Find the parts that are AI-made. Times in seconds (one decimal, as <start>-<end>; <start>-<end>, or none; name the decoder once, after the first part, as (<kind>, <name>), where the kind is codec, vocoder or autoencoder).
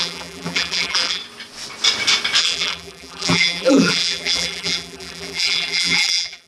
0.0-1.2 (vocoder, BigVGAN v2); 2.4-6.5